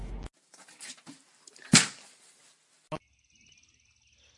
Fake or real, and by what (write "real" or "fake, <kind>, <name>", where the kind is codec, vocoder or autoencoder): real